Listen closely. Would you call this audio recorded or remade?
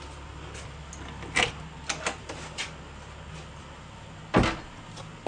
recorded